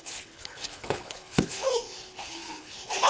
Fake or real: fake